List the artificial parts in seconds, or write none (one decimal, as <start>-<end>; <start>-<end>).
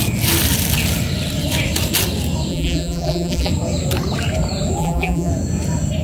2.5-3.5; 4.8-5.3